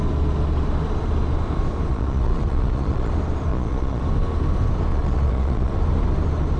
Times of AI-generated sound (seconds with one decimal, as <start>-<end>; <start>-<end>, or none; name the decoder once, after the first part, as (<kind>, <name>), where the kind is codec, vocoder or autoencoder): 1.9-3.1 (vocoder, Vocos); 3.5-4.0; 4.9-5.7